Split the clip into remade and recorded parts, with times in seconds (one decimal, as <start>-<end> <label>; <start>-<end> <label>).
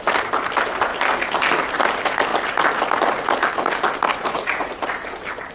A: 0.0-4.1 recorded; 4.1-4.7 remade; 4.7-5.5 recorded